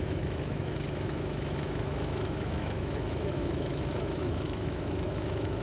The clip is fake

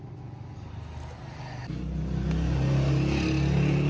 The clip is real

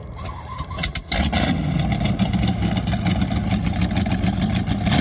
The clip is real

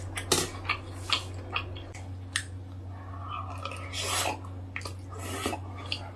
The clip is real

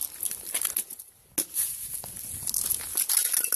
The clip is real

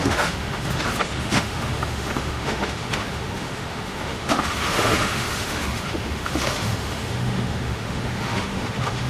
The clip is fake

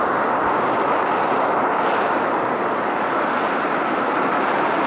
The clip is real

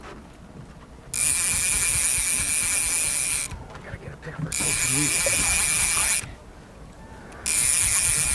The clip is real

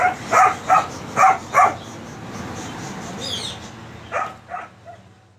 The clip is real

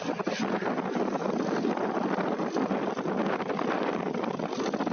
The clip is real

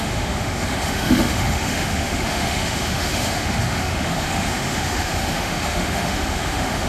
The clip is fake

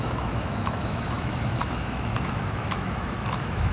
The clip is fake